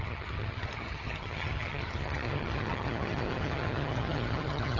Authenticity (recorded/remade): remade